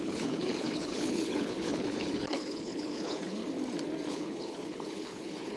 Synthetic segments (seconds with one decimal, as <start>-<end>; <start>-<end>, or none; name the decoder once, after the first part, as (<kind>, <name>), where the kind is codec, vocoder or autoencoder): 0.0-3.4 (codec, HILCodec); 4.1-5.6